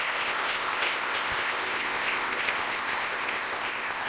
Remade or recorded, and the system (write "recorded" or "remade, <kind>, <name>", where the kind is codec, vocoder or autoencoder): remade, codec, ZipCodec